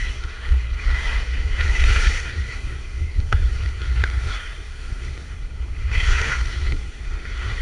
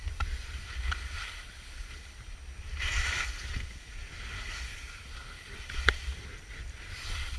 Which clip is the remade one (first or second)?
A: first